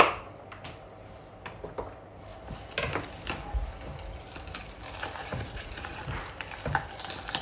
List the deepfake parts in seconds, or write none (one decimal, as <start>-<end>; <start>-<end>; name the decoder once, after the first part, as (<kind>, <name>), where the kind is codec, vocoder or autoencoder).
5.3-6.0 (vocoder, Vocos)